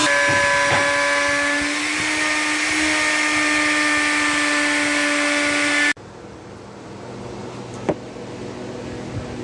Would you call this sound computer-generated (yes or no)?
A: no